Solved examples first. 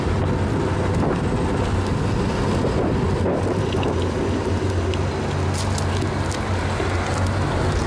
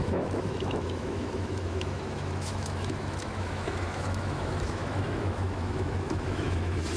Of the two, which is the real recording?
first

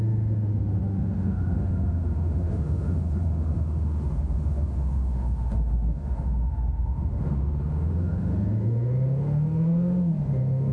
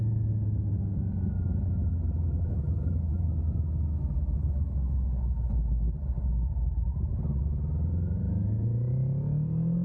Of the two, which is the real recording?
second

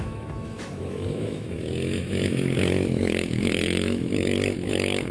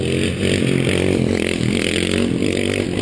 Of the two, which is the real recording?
second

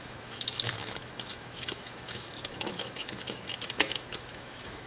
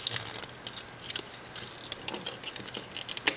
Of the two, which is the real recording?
second